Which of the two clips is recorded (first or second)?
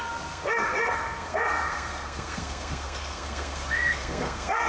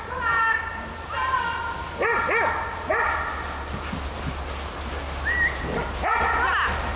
second